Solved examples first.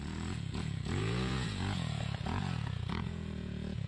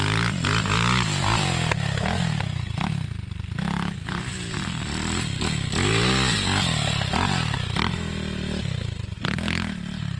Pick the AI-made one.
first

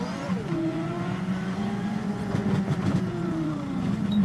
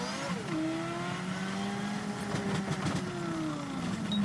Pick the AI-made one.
first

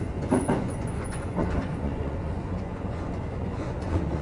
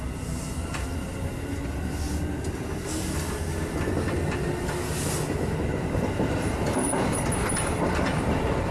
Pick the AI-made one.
first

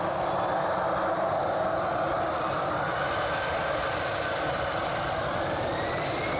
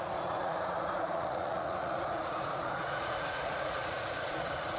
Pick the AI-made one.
second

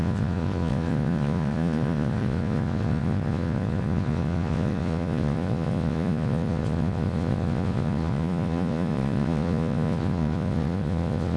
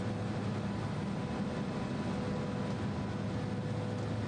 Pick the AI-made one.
first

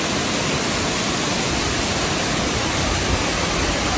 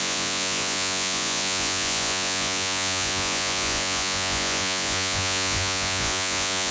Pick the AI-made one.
second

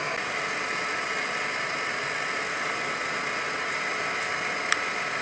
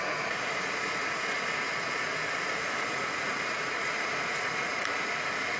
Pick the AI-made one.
second